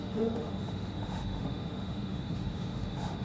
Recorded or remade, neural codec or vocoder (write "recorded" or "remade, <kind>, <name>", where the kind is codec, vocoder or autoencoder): remade, autoencoder, DAC-VAE